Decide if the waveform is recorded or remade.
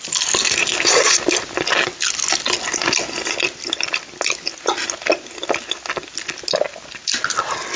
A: recorded